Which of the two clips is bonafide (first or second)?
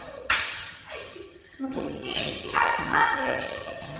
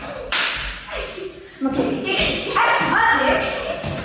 second